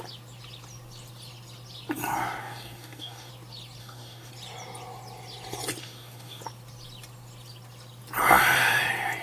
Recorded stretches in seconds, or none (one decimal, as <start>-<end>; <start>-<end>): 0.0-2.4; 3.3-3.8; 4.3-5.8; 6.4-9.2